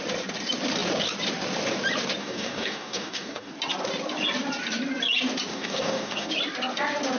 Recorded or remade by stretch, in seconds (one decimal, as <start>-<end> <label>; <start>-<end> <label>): 0.0-2.2 recorded; 2.2-3.5 remade; 3.5-5.5 recorded; 5.5-6.3 remade; 6.3-7.2 recorded